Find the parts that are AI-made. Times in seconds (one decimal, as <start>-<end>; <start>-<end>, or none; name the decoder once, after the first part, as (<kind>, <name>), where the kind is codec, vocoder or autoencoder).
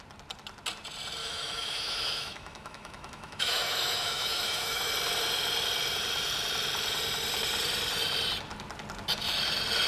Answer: 1.2-4.9 (autoencoder, DAC-VAE)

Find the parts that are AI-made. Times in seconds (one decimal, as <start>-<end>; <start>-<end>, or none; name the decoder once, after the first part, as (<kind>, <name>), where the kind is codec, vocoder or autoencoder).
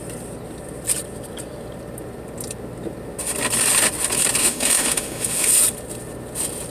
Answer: 4.4-5.5 (autoencoder, DAC-VAE)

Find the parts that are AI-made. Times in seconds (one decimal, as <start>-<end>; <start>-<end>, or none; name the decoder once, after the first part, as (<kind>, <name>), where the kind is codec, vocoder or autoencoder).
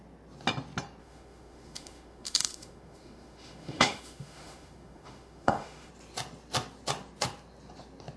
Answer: 1.0-5.9 (autoencoder, DAC-VAE)